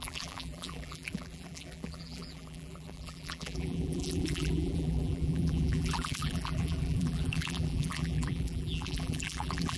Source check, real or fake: fake